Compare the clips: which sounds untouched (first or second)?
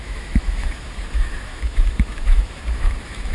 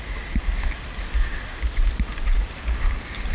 second